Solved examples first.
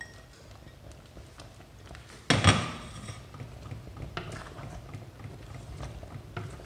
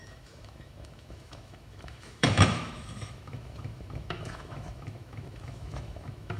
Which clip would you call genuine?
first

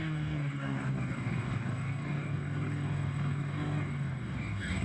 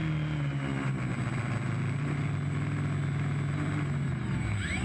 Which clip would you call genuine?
second